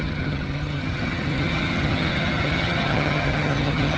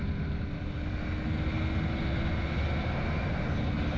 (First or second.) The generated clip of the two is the first